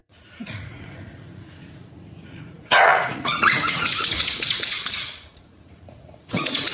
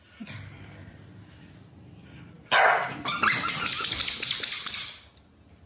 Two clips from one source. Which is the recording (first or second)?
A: second